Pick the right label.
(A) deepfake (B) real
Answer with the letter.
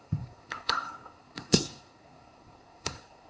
A